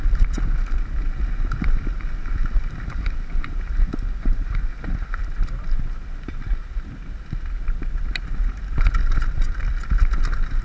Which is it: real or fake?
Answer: real